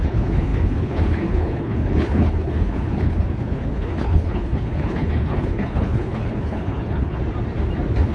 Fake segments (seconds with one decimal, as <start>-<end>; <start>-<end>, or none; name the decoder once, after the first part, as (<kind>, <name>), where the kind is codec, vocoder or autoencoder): 0.0-7.2 (codec, HILCodec)